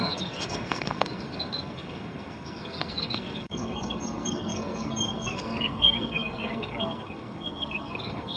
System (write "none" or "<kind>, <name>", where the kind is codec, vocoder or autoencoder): codec, SNAC